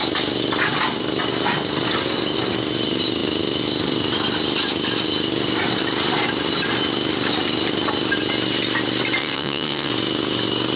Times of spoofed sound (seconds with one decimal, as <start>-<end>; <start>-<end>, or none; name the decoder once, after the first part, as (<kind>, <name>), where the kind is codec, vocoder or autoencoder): 9.2-9.9 (vocoder, WaveNeXt)